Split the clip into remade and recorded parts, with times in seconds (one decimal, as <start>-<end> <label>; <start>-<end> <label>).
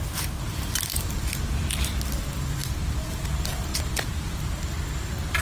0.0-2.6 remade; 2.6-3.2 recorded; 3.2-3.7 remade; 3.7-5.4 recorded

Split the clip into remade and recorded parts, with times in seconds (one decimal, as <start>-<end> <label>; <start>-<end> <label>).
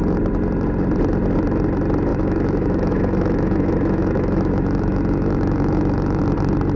0.0-2.1 recorded; 2.1-6.2 remade; 6.2-6.8 recorded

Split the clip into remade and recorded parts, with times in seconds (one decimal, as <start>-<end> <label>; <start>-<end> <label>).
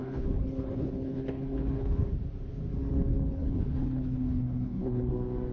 0.0-2.0 remade; 2.0-3.1 recorded; 3.1-5.1 remade; 5.1-5.5 recorded